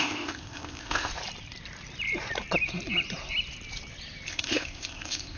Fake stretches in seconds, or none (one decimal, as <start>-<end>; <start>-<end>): 0.0-1.1; 4.3-5.4

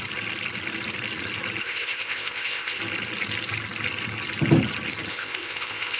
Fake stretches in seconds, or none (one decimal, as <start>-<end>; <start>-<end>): 1.6-2.8; 5.1-6.0

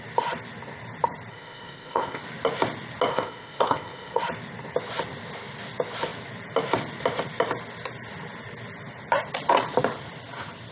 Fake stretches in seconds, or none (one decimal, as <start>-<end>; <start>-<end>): 1.3-2.2; 3.1-4.2

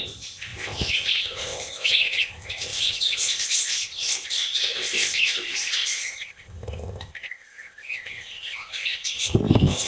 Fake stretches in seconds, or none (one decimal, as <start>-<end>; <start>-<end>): 0.0-9.9

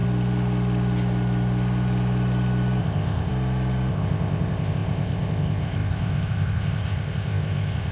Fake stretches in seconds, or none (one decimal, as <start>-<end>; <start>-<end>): 2.8-3.3; 3.9-7.9

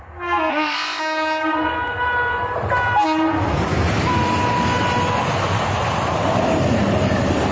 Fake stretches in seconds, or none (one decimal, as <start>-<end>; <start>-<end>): 0.5-1.0

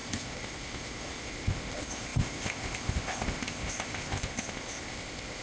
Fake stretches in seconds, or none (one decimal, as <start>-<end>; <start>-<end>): 0.0-5.4